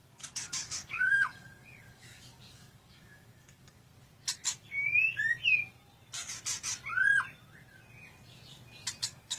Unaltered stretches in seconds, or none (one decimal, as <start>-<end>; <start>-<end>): 3.9-9.0